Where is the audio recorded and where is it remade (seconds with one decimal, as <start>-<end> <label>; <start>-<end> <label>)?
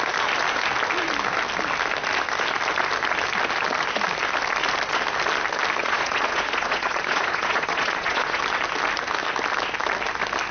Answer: 0.0-5.8 recorded; 5.8-8.4 remade; 8.4-10.5 recorded